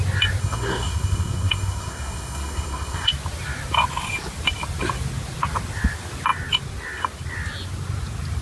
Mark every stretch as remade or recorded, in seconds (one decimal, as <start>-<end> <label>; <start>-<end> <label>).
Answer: 0.0-0.4 recorded; 0.4-3.1 remade; 3.1-8.4 recorded